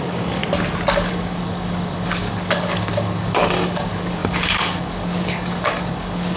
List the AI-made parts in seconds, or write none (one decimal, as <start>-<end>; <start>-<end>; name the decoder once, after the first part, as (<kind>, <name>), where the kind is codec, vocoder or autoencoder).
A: 0.0-0.4 (codec, DAC); 0.9-6.4